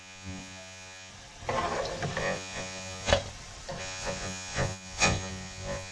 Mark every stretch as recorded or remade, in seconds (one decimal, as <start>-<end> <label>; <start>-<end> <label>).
0.0-1.1 remade; 1.1-2.2 recorded; 2.2-3.1 remade; 3.1-3.8 recorded; 3.8-5.9 remade